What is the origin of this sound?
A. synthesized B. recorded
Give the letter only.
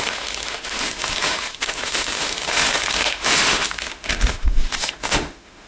A